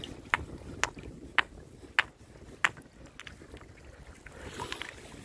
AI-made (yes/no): no